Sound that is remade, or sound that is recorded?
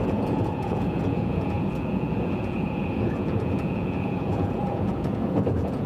remade